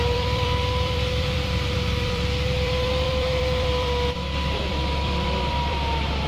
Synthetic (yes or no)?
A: yes